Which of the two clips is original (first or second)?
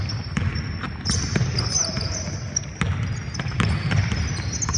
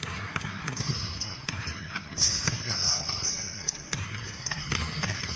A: first